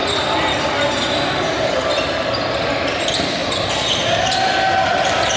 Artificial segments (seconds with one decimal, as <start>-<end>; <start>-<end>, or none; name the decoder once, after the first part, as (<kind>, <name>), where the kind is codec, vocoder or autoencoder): none